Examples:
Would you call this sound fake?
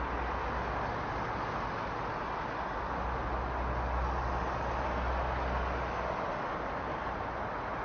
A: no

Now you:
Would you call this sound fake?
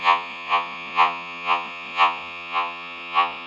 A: yes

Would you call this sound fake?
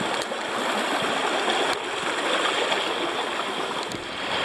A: no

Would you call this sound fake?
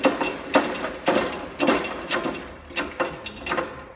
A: no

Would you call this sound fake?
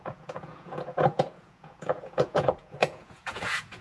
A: yes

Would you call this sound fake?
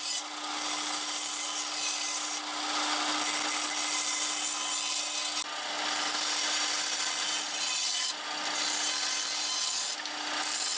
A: no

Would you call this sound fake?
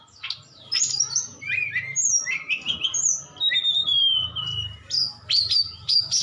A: no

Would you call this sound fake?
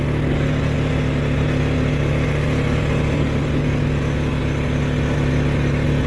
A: no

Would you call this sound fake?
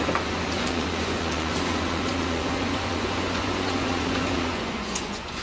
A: yes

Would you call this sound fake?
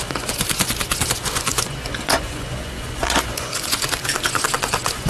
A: yes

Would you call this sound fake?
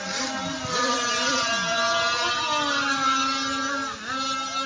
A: no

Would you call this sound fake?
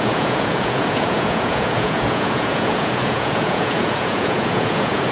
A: yes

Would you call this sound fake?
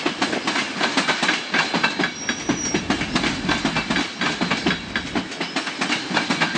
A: no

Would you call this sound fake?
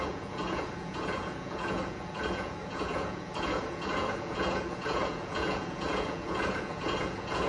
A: yes